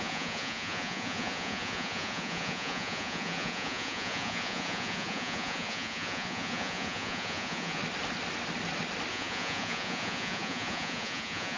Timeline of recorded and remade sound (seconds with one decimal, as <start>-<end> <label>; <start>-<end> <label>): 0.0-7.8 remade; 7.8-9.1 recorded; 9.1-11.6 remade